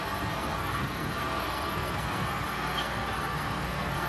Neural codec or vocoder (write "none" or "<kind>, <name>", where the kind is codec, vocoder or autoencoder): codec, SNAC